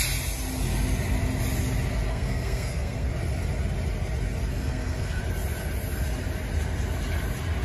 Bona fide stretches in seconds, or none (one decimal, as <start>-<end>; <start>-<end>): 0.0-2.1; 3.1-4.5; 5.2-7.6